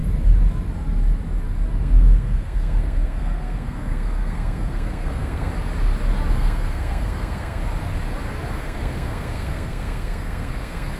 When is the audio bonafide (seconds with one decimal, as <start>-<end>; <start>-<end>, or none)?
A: 0.0-1.8; 5.5-6.3; 7.6-8.5